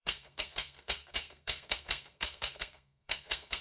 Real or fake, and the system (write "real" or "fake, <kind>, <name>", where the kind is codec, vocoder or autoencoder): fake, codec, SNAC